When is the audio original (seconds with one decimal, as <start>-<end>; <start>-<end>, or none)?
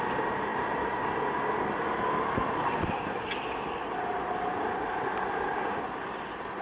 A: 0.0-6.6